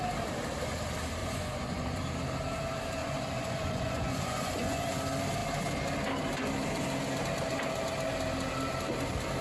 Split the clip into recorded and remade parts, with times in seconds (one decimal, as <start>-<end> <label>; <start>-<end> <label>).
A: 0.0-1.2 recorded; 1.2-2.0 remade; 2.0-3.0 recorded; 3.0-4.9 remade; 4.9-9.4 recorded

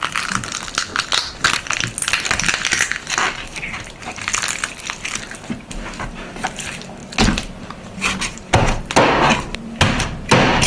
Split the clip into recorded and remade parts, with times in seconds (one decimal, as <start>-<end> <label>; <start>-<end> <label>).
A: 0.0-10.7 recorded

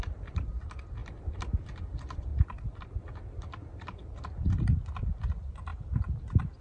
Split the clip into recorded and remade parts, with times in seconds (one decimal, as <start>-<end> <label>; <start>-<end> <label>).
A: 0.0-2.3 remade; 2.3-2.8 recorded; 2.8-4.0 remade; 4.0-5.1 recorded; 5.1-6.6 remade

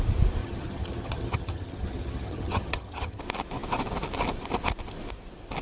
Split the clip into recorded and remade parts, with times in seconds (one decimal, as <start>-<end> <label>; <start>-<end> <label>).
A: 0.0-0.4 recorded; 0.4-3.2 remade; 3.2-5.6 recorded

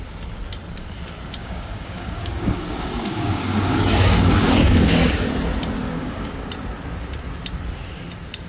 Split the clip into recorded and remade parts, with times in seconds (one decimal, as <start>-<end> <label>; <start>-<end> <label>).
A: 0.0-1.4 recorded; 1.4-5.3 remade; 5.3-5.8 recorded; 5.8-6.5 remade; 6.5-8.5 recorded

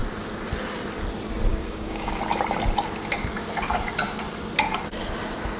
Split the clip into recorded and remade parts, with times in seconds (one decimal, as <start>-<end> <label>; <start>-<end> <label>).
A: 0.0-1.5 recorded; 1.5-2.2 remade; 2.2-5.6 recorded

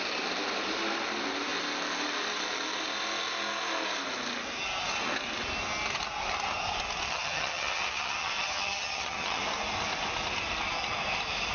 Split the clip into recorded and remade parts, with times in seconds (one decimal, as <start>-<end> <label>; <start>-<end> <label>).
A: 0.0-7.1 recorded; 7.1-9.4 remade; 9.4-11.5 recorded